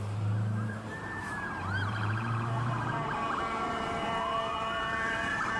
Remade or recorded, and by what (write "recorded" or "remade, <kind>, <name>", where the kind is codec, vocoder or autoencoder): remade, vocoder, BigVGAN v2